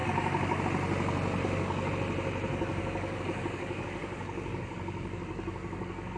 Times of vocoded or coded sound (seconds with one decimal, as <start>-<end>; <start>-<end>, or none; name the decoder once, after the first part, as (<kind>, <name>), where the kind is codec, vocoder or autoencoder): 0.0-0.6 (codec, DAC); 1.4-1.9; 2.5-6.2